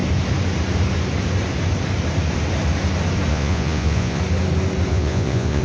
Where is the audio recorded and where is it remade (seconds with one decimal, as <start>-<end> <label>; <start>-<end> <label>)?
0.0-3.3 recorded; 3.3-4.2 remade; 4.2-4.9 recorded; 4.9-5.6 remade